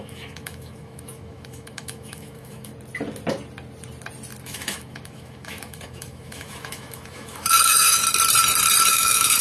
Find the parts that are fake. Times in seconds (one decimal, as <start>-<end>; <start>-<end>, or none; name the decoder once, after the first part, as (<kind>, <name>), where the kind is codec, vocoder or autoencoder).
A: 0.0-2.7 (autoencoder, DAC-VAE); 4.4-8.0; 8.9-9.4